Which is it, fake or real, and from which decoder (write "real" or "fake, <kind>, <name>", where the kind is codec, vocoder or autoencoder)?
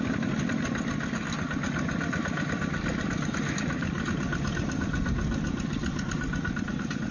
real